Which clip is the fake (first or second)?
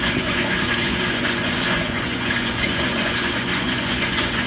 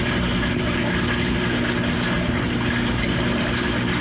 first